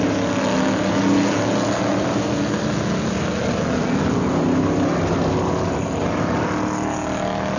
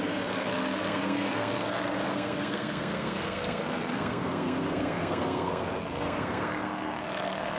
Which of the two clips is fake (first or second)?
second